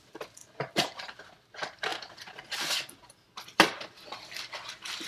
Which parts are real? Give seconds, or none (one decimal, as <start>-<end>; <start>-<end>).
0.0-0.4; 1.2-5.1

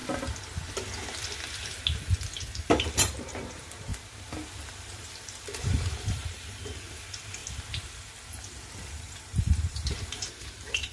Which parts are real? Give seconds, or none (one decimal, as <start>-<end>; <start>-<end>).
0.0-2.5; 3.9-4.7; 7.4-8.8